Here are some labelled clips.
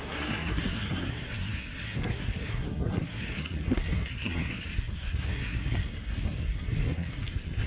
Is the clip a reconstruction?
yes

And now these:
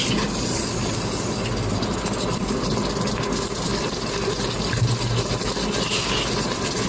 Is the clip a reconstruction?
no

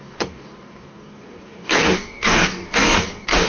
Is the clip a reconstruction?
yes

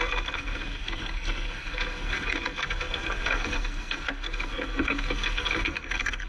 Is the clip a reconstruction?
yes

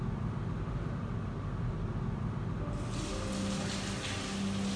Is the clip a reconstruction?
no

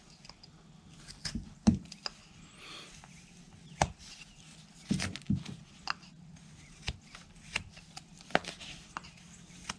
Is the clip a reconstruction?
no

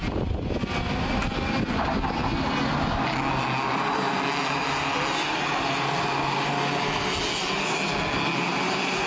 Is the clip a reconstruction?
no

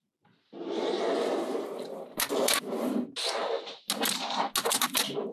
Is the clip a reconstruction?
no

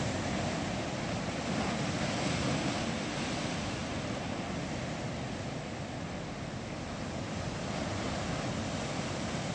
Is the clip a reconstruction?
no